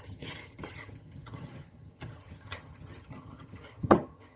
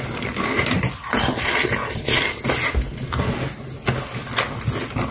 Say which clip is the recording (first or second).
second